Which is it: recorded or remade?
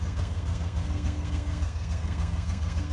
remade